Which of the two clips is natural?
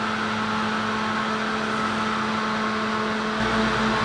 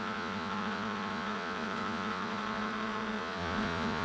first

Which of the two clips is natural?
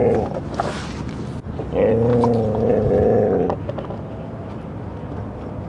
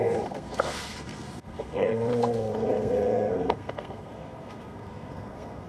first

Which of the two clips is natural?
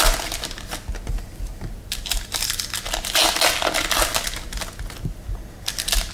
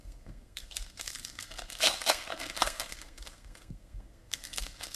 first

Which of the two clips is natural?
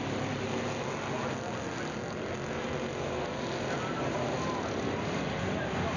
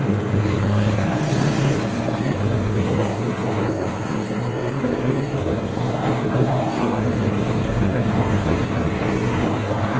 first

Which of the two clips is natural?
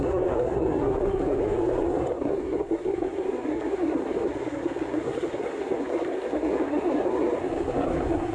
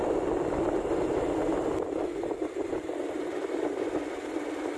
second